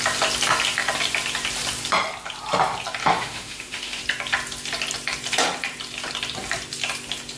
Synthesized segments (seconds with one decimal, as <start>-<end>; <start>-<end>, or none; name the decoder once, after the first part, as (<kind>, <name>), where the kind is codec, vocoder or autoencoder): 3.0-4.0 (autoencoder, DAC-VAE)